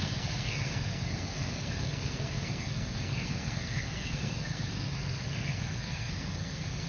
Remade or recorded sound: remade